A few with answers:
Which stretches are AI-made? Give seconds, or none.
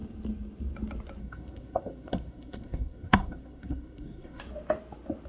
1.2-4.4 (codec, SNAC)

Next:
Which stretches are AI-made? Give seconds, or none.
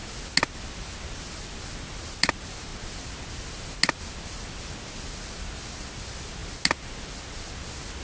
none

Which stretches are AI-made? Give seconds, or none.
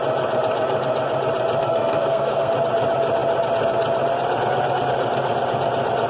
1.6-2.5 (codec, SNAC)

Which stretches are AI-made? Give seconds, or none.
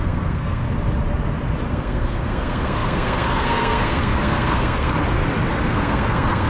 0.0-0.6 (codec, SNAC); 1.7-4.9; 5.5-6.5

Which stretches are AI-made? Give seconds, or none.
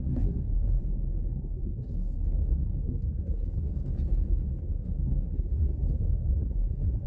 0.0-0.8 (codec, SNAC); 1.3-3.8; 4.7-7.1